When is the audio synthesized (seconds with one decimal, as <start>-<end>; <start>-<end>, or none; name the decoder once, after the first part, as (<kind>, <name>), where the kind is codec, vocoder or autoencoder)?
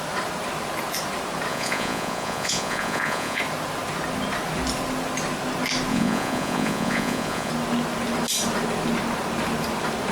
1.5-3.4 (vocoder, Vocos); 5.9-7.5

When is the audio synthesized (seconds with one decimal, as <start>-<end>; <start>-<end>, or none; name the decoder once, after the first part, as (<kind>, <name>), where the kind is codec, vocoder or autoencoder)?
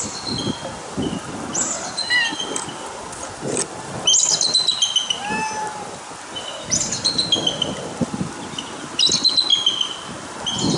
none